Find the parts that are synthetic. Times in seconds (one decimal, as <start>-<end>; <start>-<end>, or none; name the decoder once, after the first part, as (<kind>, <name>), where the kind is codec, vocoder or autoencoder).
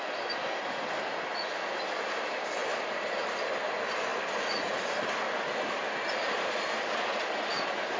none